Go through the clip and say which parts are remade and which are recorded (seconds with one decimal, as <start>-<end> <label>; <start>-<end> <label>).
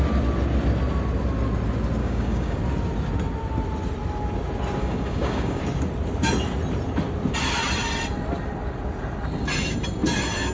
0.0-2.0 recorded; 2.0-2.6 remade; 2.6-4.8 recorded; 4.8-5.6 remade; 5.6-10.5 recorded